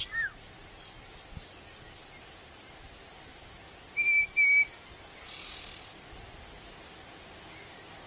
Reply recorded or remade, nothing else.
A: recorded